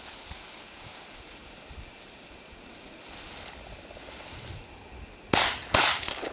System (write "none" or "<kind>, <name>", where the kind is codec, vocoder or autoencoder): none